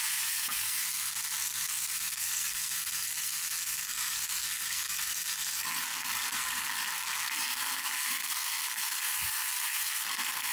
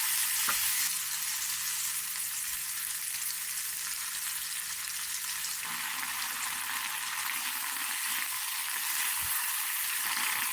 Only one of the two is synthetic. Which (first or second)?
first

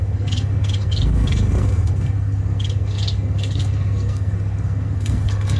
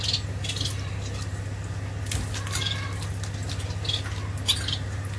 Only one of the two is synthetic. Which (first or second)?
first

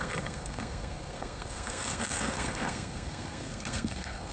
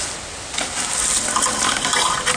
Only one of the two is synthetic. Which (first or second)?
first